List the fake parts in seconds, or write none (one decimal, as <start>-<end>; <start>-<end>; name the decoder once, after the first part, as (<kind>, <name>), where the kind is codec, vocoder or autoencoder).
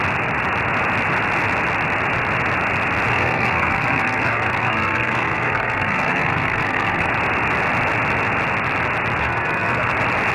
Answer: 3.1-7.1 (codec, SNAC); 9.2-9.9